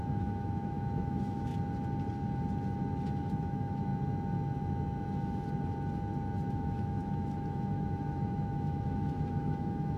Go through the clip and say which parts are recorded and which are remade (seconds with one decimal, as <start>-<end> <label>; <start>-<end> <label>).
0.0-1.5 remade; 1.5-3.3 recorded; 3.3-3.9 remade; 3.9-6.5 recorded; 6.5-10.0 remade